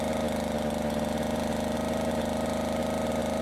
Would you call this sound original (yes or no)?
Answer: yes